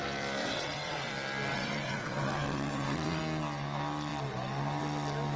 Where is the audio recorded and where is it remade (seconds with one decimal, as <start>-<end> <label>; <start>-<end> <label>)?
0.0-0.4 recorded; 0.4-1.1 remade; 1.1-1.5 recorded; 1.5-3.2 remade; 3.2-5.4 recorded